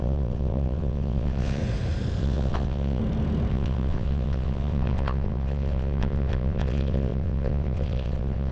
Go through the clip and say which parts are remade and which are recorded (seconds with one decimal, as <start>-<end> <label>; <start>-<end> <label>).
0.0-1.6 remade; 1.6-2.2 recorded; 2.2-3.0 remade; 3.0-3.5 recorded; 3.5-8.5 remade